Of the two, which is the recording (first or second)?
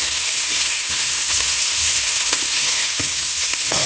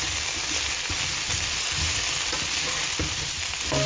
second